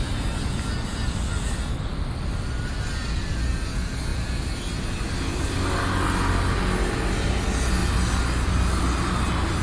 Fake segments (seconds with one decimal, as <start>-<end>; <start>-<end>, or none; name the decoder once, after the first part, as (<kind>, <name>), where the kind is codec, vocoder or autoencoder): none